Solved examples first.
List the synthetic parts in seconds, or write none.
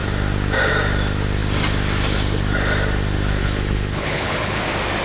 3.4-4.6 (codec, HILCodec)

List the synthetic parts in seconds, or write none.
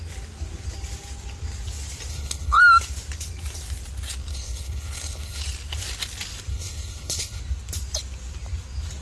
2.1-2.6 (codec, HILCodec); 4.3-5.4; 6.5-7.4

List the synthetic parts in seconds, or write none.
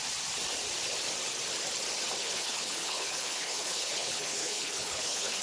2.2-5.4 (codec, HILCodec)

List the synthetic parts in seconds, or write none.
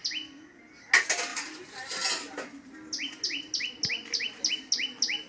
none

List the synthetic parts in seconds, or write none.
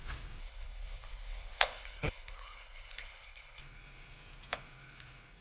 0.4-3.6 (codec, HILCodec)